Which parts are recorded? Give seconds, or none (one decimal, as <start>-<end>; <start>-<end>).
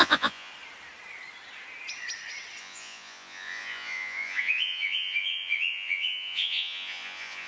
0.5-2.6